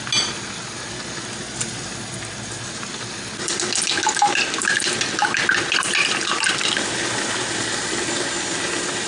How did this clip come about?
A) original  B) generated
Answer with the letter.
A